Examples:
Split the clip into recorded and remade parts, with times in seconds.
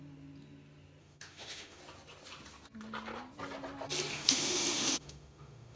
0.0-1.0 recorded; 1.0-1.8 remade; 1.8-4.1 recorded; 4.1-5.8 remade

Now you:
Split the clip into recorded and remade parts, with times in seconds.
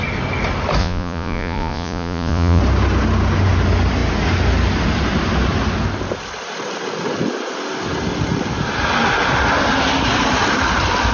0.0-0.8 recorded; 0.8-2.6 remade; 2.6-11.1 recorded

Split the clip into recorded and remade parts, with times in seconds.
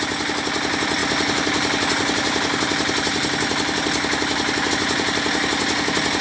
0.0-6.2 recorded